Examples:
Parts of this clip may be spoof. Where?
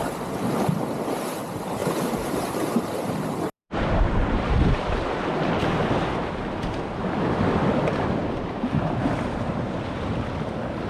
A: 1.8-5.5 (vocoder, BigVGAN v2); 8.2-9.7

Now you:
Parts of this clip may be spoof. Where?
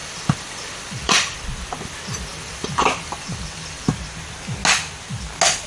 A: 0.0-1.4 (vocoder, BigVGAN v2); 2.3-3.9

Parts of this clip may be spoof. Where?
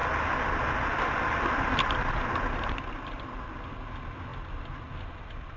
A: 0.0-3.4 (vocoder, BigVGAN v2)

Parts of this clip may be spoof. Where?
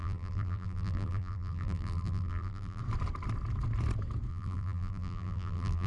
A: 0.0-2.8 (vocoder, BigVGAN v2); 4.3-5.9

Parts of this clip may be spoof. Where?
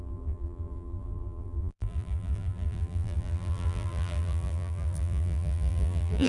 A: 0.0-6.3 (vocoder, BigVGAN v2)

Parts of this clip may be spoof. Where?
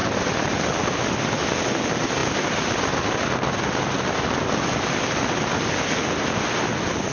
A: none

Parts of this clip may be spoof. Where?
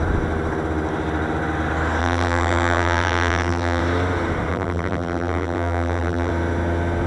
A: 2.0-3.8 (vocoder, BigVGAN v2); 4.5-6.3